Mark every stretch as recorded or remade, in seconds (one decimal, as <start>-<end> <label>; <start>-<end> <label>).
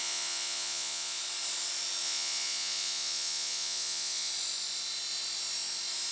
0.0-1.2 remade; 1.2-2.0 recorded; 2.0-4.3 remade; 4.3-6.1 recorded